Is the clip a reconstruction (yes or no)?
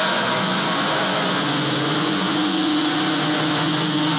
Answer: yes